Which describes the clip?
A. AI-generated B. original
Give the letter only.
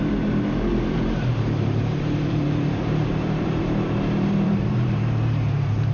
A